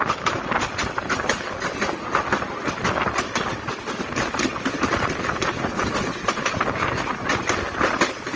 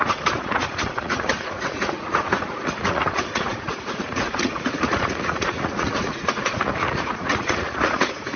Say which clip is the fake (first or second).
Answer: second